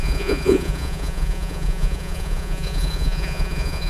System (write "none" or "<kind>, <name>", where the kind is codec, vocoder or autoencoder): vocoder, Vocos